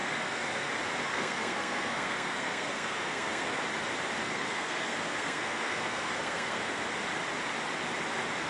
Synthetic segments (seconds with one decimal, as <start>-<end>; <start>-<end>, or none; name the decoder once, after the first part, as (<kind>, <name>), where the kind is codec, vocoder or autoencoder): 0.0-0.7 (codec, SNAC); 1.1-3.6; 4.2-6.8